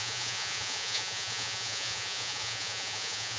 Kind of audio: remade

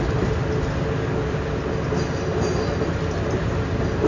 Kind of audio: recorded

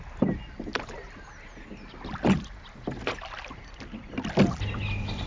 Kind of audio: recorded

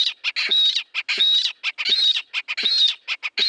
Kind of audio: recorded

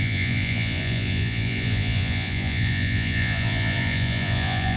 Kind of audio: remade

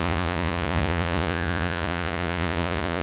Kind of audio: remade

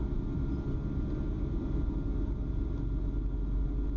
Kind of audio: recorded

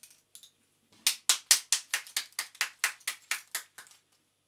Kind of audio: recorded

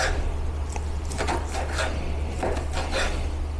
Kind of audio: recorded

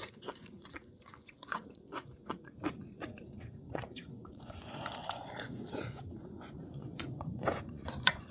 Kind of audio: remade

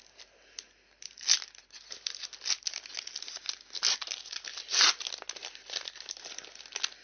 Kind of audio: recorded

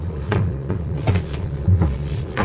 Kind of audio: remade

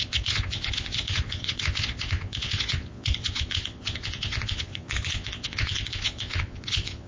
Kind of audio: remade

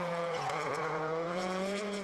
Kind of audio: remade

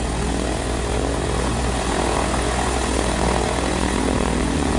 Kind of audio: remade